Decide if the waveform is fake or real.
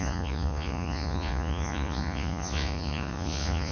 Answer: fake